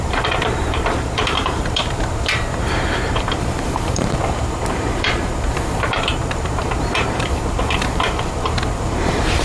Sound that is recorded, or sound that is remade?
remade